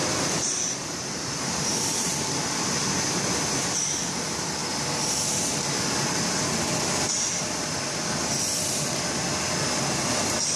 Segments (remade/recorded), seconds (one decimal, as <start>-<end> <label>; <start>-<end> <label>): 0.0-0.4 recorded; 0.4-2.1 remade; 2.1-10.6 recorded